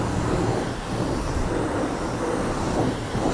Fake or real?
real